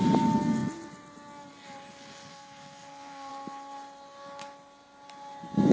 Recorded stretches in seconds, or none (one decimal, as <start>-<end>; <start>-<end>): 0.0-2.3; 3.3-5.7